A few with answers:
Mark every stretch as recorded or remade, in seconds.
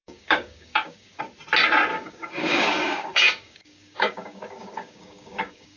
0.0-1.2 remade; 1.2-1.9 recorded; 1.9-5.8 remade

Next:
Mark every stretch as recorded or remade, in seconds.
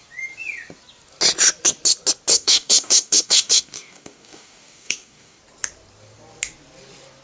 0.0-2.3 recorded; 2.3-5.4 remade; 5.4-7.2 recorded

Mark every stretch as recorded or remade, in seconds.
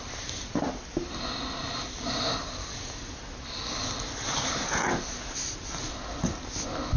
0.0-2.6 recorded; 2.6-3.2 remade; 3.2-7.0 recorded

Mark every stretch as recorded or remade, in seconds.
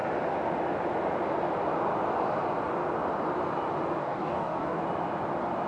0.0-4.0 recorded; 4.0-4.8 remade; 4.8-5.7 recorded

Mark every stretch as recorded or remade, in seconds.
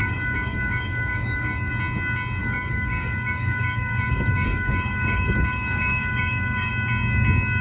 0.0-1.7 remade; 1.7-2.4 recorded; 2.4-6.7 remade; 6.7-7.6 recorded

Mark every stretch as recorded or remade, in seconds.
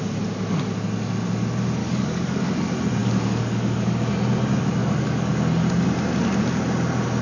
0.0-1.8 recorded; 1.8-2.5 remade; 2.5-3.0 recorded; 3.0-4.1 remade; 4.1-4.8 recorded; 4.8-5.3 remade; 5.3-7.2 recorded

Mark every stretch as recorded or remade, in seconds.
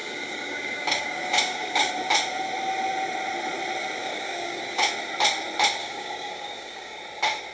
0.0-1.9 remade; 1.9-4.0 recorded; 4.0-4.9 remade; 4.9-5.8 recorded; 5.8-7.0 remade; 7.0-7.5 recorded